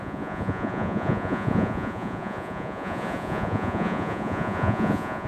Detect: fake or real fake